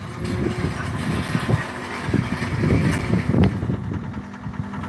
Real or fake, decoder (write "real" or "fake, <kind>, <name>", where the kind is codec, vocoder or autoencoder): real